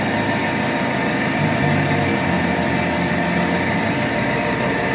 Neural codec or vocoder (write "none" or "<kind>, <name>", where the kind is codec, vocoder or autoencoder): none